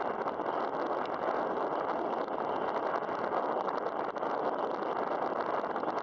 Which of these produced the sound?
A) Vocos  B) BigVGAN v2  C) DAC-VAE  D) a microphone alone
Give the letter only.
D